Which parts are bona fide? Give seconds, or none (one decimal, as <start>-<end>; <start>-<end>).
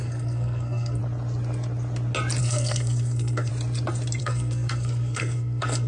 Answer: 1.0-2.4; 3.5-4.2